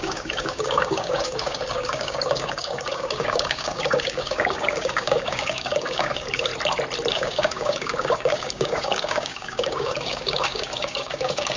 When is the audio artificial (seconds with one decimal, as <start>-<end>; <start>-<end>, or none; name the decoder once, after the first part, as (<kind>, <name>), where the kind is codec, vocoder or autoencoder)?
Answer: 0.0-6.5 (codec, DAC); 7.1-11.6